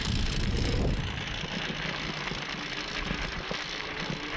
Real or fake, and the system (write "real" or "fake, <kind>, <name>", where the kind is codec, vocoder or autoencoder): real